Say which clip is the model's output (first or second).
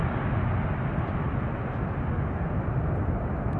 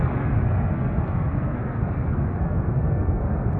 second